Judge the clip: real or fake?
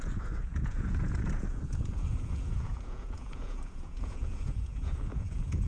fake